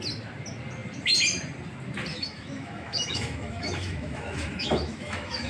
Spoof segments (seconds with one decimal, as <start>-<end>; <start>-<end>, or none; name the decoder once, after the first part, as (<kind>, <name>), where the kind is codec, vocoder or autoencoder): 2.1-5.5 (autoencoder, DAC-VAE)